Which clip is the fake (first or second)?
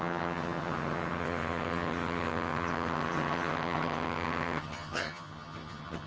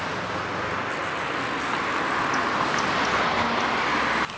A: first